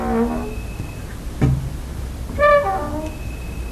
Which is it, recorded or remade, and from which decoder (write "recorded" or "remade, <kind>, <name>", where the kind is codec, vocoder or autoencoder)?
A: recorded